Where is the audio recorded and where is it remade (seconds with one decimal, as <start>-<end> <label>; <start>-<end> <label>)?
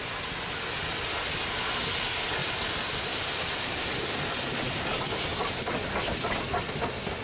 0.0-7.2 recorded